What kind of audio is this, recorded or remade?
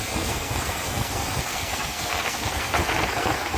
remade